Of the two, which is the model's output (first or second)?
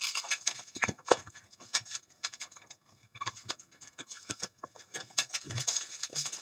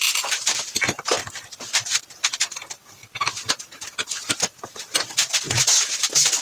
first